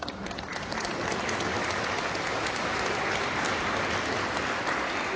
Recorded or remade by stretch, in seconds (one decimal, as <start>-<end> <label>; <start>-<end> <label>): 0.0-5.2 recorded